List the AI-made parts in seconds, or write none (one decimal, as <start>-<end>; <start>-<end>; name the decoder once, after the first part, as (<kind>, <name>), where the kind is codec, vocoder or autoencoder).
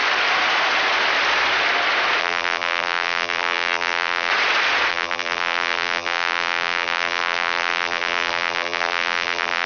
2.2-4.3 (vocoder, BigVGAN v2); 4.9-9.7